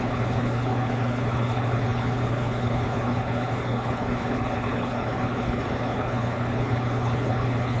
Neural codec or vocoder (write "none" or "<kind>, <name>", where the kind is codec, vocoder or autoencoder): codec, HILCodec